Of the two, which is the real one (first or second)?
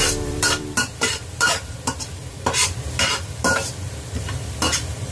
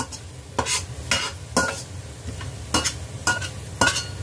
second